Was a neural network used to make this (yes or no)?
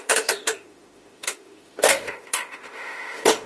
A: yes